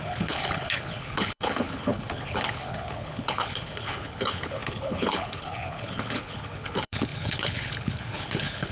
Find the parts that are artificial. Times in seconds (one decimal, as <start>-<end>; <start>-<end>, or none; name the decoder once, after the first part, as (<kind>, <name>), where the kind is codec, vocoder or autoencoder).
0.0-8.7 (codec, HILCodec)